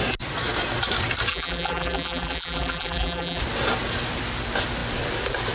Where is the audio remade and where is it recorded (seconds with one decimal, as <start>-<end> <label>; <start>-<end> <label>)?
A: 0.0-1.3 recorded; 1.3-3.4 remade; 3.4-5.5 recorded